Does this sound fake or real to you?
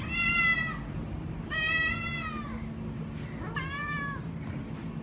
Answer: real